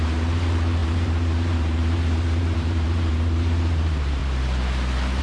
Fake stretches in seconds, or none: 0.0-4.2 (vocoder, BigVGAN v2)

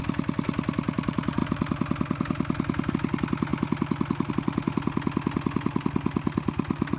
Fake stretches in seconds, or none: none

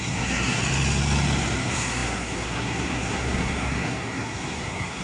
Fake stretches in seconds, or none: 0.0-0.6 (codec, SNAC); 1.6-5.0

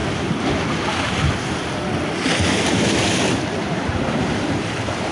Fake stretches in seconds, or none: none